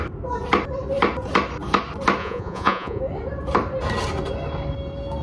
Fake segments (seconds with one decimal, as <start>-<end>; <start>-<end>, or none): 2.2-3.0